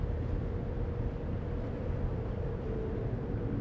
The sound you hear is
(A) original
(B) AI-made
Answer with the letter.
A